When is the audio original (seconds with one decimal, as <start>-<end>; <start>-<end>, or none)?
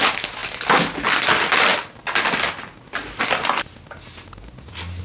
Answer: 0.0-5.0